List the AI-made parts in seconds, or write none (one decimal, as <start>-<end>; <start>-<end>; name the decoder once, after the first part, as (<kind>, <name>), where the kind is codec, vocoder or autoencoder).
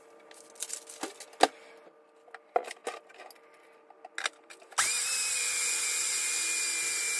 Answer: none